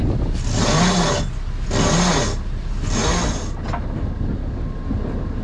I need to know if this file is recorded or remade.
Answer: recorded